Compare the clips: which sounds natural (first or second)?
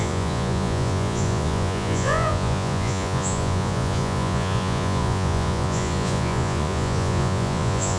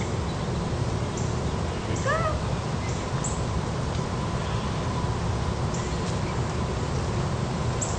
second